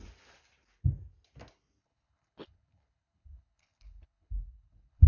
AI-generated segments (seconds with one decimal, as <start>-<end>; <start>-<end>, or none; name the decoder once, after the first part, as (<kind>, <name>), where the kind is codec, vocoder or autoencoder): 1.8-5.1 (codec, HILCodec)